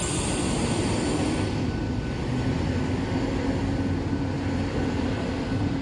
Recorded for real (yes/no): yes